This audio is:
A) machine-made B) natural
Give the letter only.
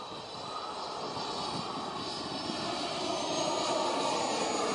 B